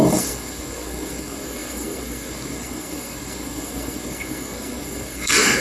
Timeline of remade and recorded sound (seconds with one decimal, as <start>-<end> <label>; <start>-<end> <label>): 0.0-5.6 remade